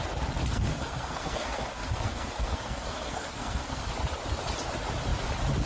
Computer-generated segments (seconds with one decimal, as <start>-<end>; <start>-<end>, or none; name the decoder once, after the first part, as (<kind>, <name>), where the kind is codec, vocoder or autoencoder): 0.5-3.9 (codec, SNAC)